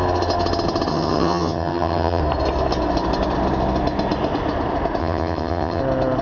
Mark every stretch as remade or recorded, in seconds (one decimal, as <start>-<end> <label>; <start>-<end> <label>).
0.0-0.9 recorded; 0.9-2.2 remade; 2.2-5.0 recorded; 5.0-5.8 remade; 5.8-6.2 recorded